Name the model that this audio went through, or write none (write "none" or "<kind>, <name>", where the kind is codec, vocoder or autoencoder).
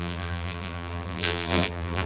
vocoder, BigVGAN v2